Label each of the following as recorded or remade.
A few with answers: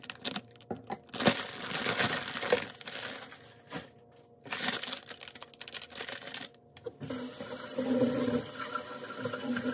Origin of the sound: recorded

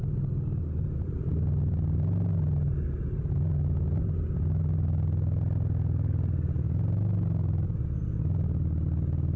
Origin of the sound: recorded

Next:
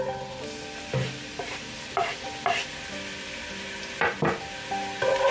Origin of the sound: recorded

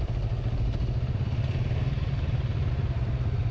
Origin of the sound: recorded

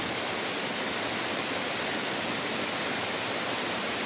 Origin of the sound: recorded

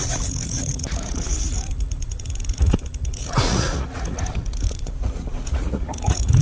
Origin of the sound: remade